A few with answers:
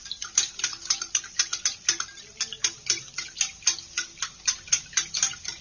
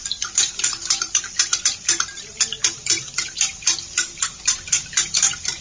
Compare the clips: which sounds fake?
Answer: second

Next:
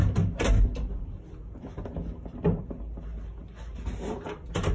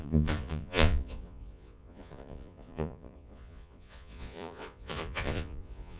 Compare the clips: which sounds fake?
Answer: second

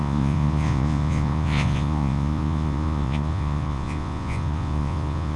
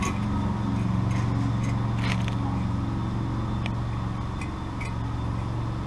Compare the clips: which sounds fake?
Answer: first